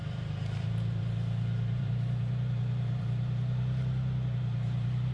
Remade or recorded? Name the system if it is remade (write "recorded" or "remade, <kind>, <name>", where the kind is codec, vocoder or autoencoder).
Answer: remade, vocoder, BigVGAN v2